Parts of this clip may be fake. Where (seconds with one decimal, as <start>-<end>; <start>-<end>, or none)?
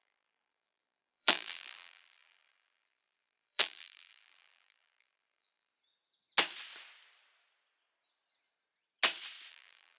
0.0-5.7; 9.5-10.0